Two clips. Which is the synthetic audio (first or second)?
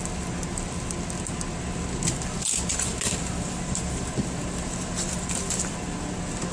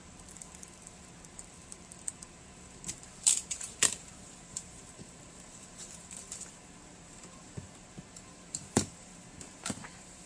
second